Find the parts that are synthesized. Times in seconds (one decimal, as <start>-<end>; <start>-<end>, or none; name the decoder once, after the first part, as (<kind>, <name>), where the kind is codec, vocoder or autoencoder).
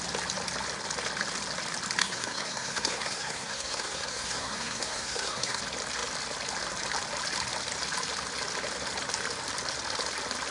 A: 2.0-5.6 (codec, SNAC)